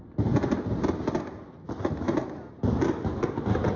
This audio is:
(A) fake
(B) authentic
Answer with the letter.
B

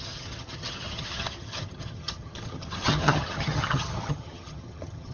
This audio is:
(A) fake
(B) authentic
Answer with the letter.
A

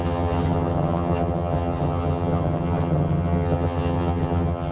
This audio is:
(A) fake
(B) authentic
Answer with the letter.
A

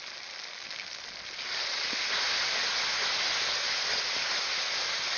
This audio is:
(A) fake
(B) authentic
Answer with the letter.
B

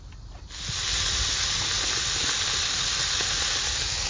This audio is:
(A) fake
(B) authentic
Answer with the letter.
B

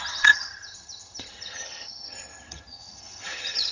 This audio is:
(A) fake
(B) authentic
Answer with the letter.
A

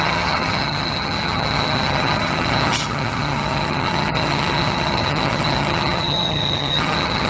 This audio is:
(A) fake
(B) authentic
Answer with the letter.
A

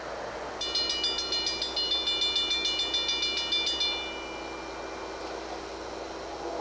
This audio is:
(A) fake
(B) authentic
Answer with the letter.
B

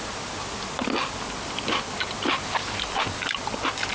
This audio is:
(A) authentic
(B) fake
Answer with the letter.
A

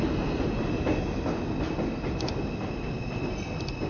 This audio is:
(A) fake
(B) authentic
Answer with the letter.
B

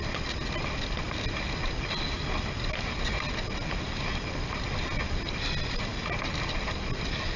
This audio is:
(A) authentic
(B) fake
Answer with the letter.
A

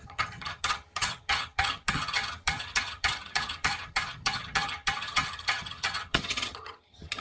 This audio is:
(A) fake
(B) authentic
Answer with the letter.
A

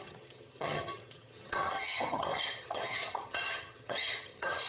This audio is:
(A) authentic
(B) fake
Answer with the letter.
B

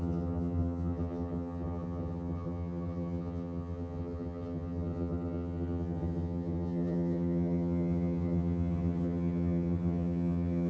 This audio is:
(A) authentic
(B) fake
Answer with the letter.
B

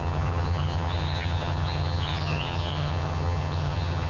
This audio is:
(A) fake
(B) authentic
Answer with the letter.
A